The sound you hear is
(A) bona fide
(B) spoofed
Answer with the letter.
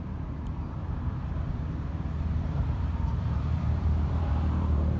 B